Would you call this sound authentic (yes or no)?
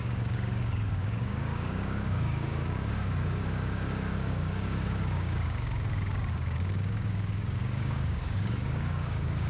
no